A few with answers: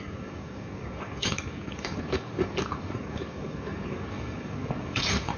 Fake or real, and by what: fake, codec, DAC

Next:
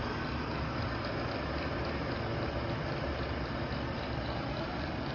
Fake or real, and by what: real